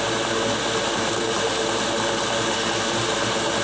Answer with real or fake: real